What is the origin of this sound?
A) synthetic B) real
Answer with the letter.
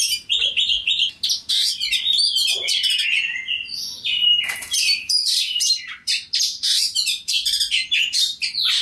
A